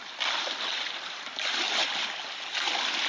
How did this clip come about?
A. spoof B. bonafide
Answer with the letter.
A